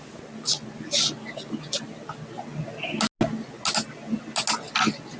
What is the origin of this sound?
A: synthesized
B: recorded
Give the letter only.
B